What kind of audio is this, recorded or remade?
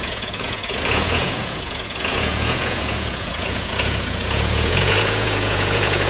remade